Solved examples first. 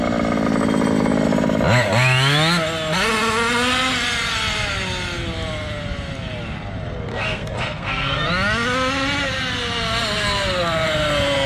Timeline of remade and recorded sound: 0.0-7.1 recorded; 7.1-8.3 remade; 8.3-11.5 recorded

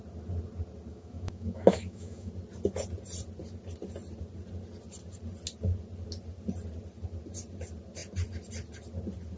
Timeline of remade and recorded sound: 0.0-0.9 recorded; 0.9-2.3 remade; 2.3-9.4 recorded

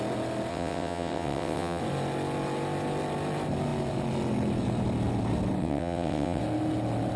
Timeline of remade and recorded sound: 0.0-0.5 recorded; 0.5-1.8 remade; 1.8-5.6 recorded; 5.6-6.4 remade; 6.4-7.2 recorded

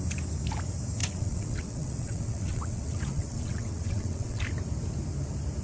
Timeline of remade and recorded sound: 0.0-1.0 recorded; 1.0-4.4 remade; 4.4-5.6 recorded

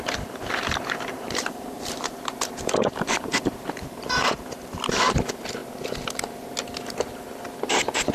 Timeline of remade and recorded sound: 0.0-3.3 remade; 3.3-4.9 recorded; 4.9-5.6 remade; 5.6-6.9 recorded; 6.9-8.1 remade

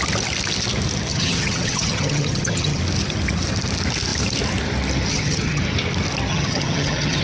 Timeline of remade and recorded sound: 0.0-1.1 recorded; 1.1-2.8 remade; 2.8-5.1 recorded; 5.1-5.6 remade; 5.6-6.3 recorded; 6.3-7.2 remade